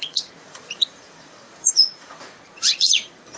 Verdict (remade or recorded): remade